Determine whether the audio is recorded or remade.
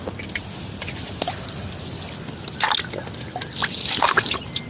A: recorded